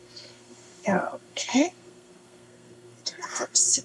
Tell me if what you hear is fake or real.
fake